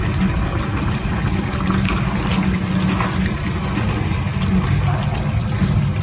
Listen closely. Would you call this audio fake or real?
real